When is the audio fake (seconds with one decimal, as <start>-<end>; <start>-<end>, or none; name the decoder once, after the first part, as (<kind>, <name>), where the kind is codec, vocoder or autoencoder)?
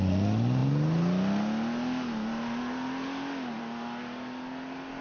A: none